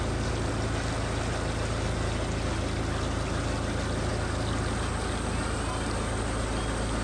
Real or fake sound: real